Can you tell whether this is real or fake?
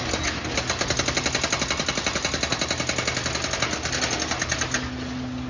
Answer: real